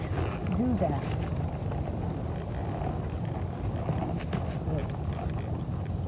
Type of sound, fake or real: real